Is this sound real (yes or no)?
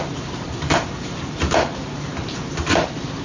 no